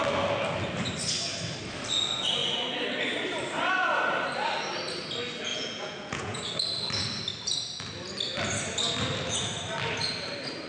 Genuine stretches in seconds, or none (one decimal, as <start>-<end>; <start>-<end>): 0.0-5.5; 6.4-10.7